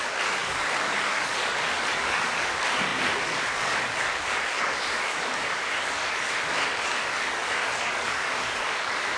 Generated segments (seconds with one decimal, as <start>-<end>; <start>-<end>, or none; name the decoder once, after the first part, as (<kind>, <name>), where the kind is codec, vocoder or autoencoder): 0.0-9.2 (codec, DAC)